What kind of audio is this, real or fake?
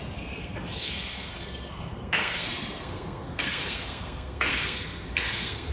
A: fake